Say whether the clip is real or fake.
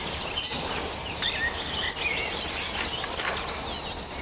real